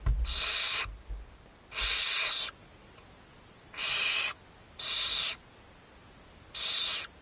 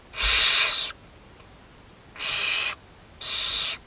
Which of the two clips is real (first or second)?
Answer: first